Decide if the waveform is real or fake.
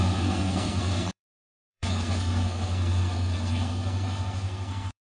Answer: fake